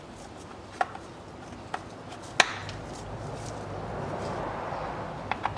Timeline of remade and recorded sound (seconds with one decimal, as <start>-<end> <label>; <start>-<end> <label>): 0.0-5.6 recorded